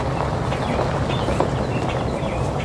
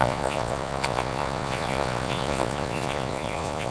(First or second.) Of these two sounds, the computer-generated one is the second